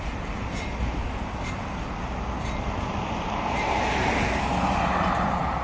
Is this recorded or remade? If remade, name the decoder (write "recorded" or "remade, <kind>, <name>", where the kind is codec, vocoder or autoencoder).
recorded